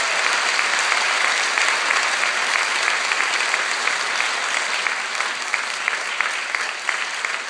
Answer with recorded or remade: recorded